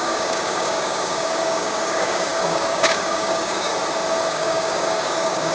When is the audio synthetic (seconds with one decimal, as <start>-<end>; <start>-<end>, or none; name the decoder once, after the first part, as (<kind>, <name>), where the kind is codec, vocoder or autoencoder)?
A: 0.0-3.7 (codec, DAC); 4.3-5.5